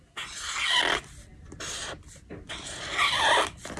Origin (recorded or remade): recorded